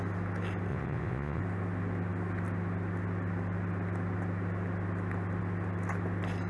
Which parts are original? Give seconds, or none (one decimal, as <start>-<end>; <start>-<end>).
0.0-0.7; 1.4-6.5